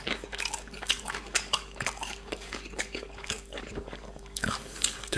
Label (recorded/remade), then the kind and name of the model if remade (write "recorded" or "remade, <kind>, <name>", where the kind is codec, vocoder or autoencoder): remade, codec, DAC